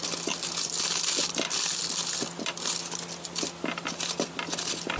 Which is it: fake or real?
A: real